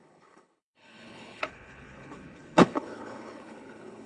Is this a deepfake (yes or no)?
yes